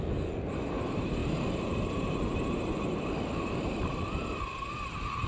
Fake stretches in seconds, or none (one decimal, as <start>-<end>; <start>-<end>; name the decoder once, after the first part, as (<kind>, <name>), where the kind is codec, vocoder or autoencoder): 1.2-4.4 (vocoder, BigVGAN v2)